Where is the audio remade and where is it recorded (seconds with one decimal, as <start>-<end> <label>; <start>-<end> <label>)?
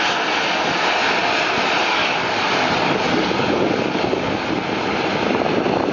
0.0-1.9 recorded; 1.9-4.5 remade; 4.5-5.9 recorded